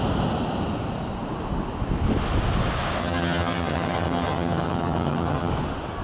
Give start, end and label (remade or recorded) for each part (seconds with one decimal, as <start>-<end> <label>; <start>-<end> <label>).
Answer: 0.0-3.0 recorded; 3.0-5.5 remade; 5.5-6.0 recorded